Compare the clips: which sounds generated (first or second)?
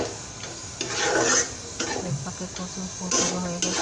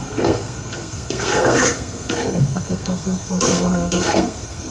second